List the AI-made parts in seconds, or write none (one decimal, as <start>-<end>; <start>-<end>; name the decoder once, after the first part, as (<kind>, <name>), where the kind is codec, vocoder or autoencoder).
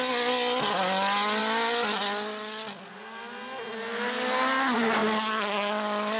none